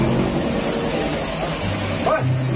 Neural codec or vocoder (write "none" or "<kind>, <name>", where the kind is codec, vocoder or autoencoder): none